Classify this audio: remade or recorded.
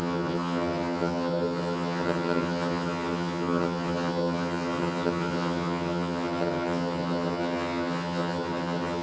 remade